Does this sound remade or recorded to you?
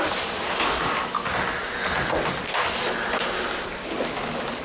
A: recorded